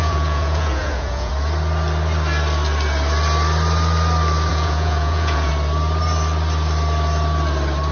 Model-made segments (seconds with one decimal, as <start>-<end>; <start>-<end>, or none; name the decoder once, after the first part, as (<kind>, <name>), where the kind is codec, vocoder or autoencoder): 0.0-1.3 (vocoder, Vocos); 4.5-5.5